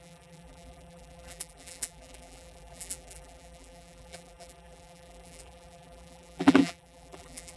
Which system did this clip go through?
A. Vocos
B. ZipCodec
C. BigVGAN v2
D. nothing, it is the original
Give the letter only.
C